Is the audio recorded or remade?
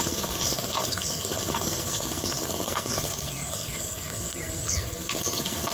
remade